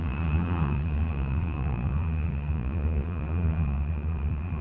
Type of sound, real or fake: fake